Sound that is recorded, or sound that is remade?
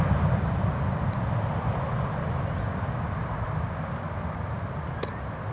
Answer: recorded